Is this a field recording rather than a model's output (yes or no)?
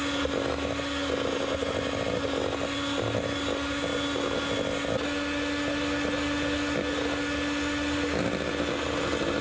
yes